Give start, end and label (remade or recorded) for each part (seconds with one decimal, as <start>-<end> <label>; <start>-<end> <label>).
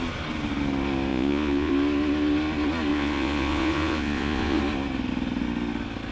0.0-1.1 recorded; 1.1-1.7 remade; 1.7-2.9 recorded; 2.9-4.6 remade; 4.6-6.1 recorded